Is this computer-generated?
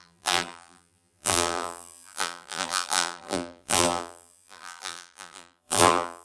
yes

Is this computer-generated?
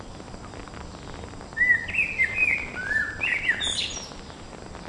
no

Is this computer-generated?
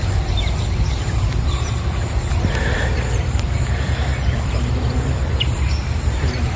yes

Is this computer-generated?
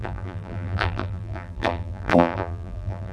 yes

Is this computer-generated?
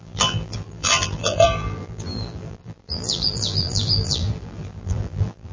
yes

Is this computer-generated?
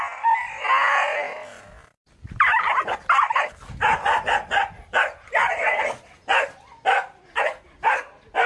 no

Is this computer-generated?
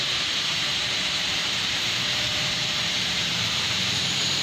yes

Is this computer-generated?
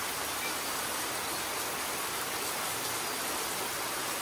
no